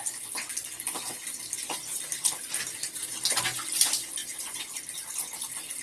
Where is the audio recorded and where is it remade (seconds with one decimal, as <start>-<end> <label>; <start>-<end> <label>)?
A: 0.0-1.8 recorded; 1.8-3.4 remade; 3.4-4.2 recorded; 4.2-5.1 remade; 5.1-5.8 recorded